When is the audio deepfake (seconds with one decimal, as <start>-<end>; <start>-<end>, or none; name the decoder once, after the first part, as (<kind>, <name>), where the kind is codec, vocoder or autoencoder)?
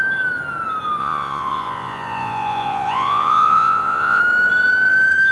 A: 1.0-4.2 (vocoder, Vocos)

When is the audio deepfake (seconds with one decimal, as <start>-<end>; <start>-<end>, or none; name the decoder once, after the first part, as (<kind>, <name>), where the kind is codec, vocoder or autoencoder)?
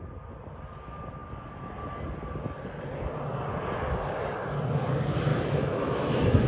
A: 5.3-6.5 (autoencoder, DAC-VAE)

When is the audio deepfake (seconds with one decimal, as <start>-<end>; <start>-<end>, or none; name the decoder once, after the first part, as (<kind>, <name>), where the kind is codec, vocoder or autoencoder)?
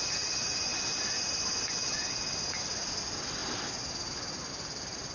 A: none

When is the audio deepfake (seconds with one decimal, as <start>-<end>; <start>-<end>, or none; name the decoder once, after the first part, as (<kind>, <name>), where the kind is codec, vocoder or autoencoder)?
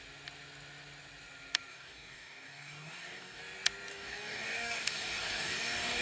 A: 1.7-3.4 (codec, DAC); 3.9-6.0